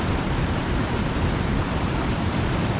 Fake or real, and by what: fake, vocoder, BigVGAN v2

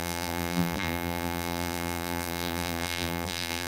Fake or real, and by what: fake, vocoder, BigVGAN v2